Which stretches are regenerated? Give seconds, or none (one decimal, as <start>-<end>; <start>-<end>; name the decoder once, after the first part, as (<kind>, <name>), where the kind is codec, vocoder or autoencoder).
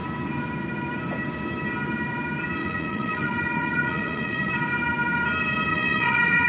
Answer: 2.6-4.5 (vocoder, Vocos); 5.7-6.5